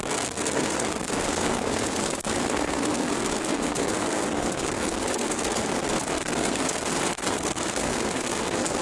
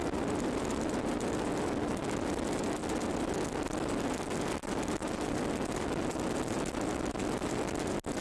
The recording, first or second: second